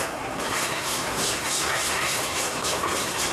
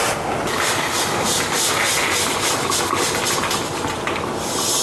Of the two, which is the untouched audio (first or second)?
second